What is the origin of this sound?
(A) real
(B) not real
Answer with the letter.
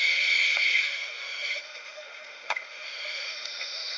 B